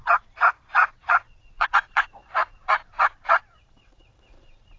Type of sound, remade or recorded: remade